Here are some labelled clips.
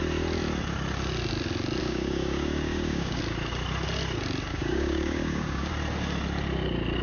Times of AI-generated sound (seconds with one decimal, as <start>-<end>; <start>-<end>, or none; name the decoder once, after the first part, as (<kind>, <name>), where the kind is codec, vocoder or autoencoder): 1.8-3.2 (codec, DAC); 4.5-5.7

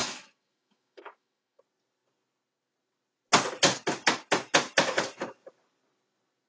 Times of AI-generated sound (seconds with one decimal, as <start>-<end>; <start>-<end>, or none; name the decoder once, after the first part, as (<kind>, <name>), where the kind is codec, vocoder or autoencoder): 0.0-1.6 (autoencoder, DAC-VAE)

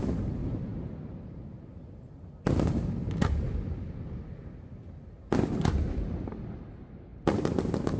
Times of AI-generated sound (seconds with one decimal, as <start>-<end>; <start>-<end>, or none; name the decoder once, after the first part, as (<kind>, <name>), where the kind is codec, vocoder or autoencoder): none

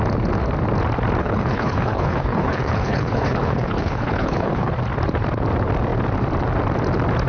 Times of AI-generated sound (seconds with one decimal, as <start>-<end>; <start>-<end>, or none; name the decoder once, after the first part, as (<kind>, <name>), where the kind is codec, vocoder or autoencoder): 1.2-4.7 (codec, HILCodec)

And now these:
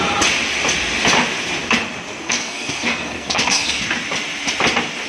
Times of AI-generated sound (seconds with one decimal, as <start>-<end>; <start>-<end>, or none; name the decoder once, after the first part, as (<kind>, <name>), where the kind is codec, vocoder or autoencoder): 2.1-3.8 (codec, SNAC)